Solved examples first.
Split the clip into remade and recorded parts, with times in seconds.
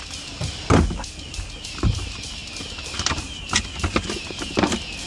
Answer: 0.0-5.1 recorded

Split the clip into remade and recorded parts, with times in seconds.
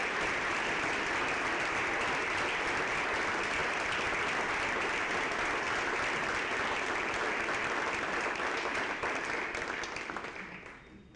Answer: 0.0-1.0 remade; 1.0-11.2 recorded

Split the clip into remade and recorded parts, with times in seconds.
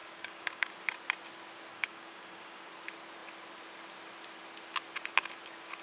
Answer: 0.0-0.7 remade; 0.7-1.7 recorded; 1.7-2.7 remade; 2.7-5.8 recorded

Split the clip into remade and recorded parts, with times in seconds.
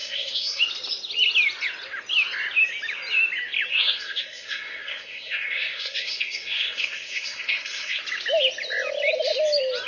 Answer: 0.0-0.6 remade; 0.6-3.7 recorded; 3.7-8.0 remade; 8.0-9.9 recorded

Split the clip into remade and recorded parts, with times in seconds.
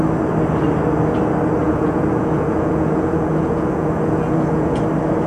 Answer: 0.0-1.6 recorded; 1.6-4.8 remade; 4.8-5.3 recorded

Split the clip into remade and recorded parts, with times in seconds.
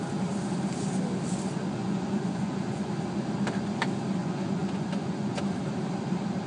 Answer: 0.0-1.8 recorded; 1.8-2.9 remade; 2.9-4.2 recorded; 4.2-5.4 remade; 5.4-6.5 recorded